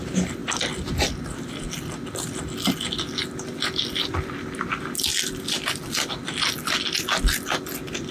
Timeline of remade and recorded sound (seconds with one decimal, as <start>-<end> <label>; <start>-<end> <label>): 0.0-8.1 recorded